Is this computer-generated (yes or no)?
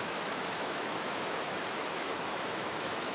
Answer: yes